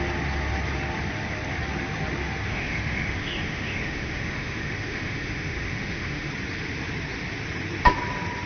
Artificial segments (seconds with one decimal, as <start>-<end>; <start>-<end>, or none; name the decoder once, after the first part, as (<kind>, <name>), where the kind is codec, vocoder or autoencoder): 2.5-6.3 (autoencoder, DAC-VAE)